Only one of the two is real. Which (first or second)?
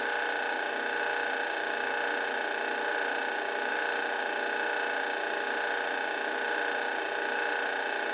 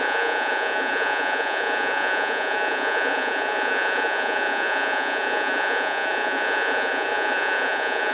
first